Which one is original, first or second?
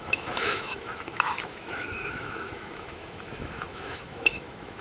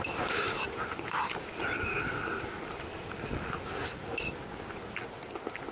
second